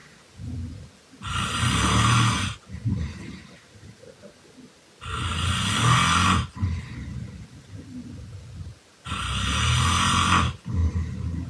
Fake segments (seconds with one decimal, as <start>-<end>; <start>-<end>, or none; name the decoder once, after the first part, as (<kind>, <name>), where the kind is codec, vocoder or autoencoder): none